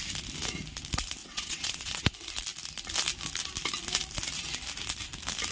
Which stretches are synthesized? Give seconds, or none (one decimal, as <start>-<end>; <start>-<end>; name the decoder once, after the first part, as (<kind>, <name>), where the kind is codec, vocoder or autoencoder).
1.2-2.1 (vocoder, WaveNeXt)

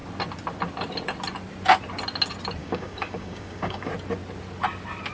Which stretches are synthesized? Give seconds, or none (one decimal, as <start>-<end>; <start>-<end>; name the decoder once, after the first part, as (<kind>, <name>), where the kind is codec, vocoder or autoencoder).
2.6-3.9 (codec, DAC)

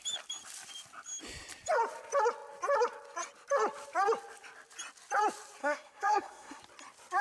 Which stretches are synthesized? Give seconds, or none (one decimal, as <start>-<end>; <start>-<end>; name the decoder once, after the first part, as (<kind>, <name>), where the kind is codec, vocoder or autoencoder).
5.6-6.6 (codec, SNAC)

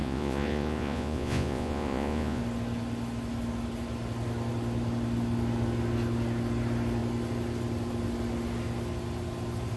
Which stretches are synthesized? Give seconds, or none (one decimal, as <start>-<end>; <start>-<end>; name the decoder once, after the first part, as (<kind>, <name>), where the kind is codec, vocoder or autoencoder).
0.0-2.4 (vocoder, Vocos)

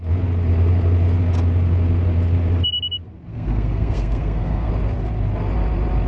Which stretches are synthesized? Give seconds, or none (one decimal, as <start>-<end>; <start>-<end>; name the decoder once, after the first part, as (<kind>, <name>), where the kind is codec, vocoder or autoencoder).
3.3-4.7 (codec, SNAC)

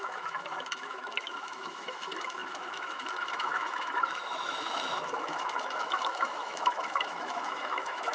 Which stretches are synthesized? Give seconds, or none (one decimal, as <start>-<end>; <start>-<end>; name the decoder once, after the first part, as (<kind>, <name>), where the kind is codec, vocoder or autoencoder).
0.0-8.1 (autoencoder, DAC-VAE)